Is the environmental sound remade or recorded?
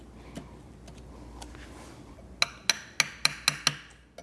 recorded